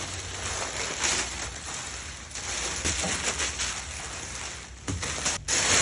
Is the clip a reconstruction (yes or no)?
no